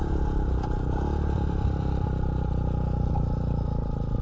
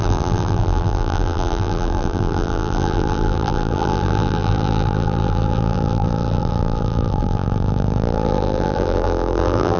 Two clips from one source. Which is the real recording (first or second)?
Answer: first